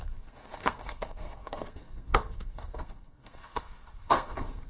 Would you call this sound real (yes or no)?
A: no